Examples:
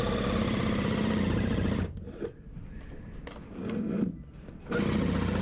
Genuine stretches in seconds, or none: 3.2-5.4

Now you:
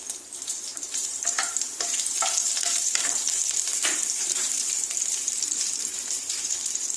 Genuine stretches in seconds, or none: 0.0-0.7; 4.9-5.9